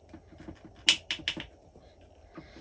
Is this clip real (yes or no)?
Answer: yes